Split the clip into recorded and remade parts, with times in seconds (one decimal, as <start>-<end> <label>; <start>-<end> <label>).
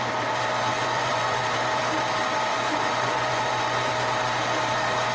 0.0-0.7 recorded; 0.7-1.4 remade; 1.4-2.5 recorded; 2.5-3.9 remade; 3.9-5.1 recorded